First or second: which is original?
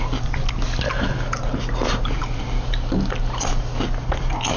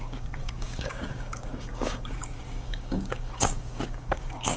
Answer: first